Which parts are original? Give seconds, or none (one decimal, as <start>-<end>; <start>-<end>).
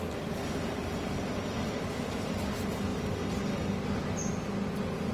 0.0-2.9; 3.4-5.1